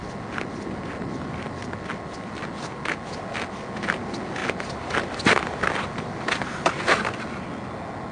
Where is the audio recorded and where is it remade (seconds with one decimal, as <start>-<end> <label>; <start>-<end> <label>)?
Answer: 0.0-8.1 recorded